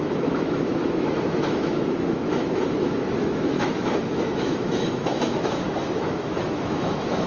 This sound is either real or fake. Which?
fake